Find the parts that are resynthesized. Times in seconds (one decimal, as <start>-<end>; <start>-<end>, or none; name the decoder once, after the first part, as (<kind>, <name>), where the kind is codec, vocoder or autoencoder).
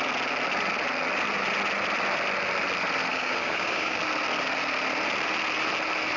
3.1-4.0 (codec, DAC)